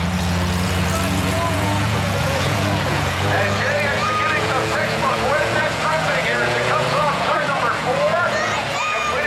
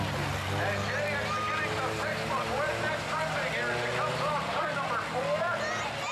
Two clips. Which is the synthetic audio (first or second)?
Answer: first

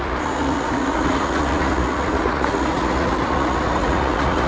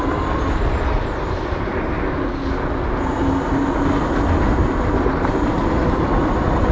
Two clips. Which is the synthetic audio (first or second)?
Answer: first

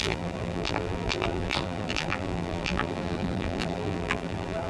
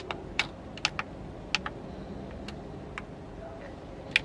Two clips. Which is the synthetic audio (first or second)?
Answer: first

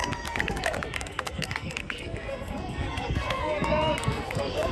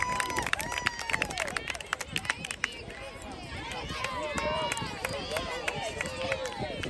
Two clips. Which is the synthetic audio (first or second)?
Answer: first